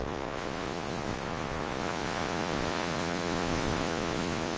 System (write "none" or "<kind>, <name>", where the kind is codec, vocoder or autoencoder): vocoder, Vocos